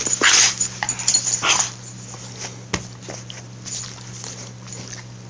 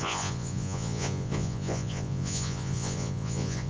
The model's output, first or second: second